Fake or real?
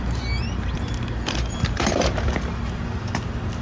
real